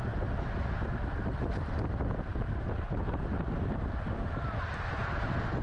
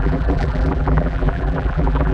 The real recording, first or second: first